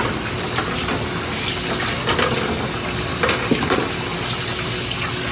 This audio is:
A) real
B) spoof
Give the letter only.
A